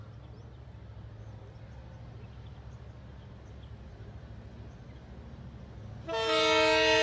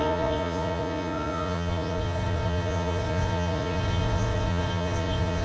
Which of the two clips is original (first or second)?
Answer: first